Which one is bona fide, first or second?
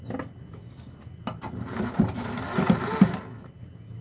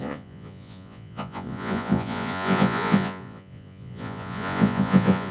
first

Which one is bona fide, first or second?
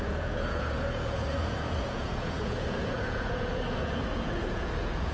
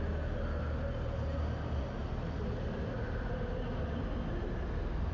second